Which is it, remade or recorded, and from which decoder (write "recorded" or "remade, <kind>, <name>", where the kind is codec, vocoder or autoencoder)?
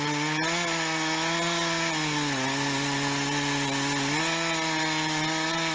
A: recorded